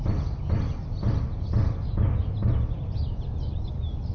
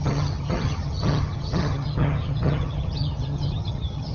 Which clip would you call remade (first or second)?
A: second